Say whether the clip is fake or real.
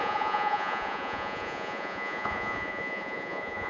fake